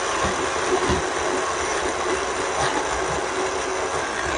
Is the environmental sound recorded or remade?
recorded